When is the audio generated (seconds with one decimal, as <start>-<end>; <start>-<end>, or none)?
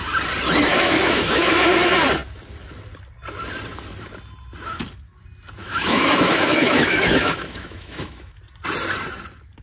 0.7-1.5; 5.6-8.4